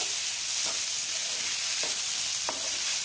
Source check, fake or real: real